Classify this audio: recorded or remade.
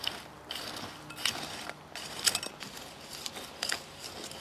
recorded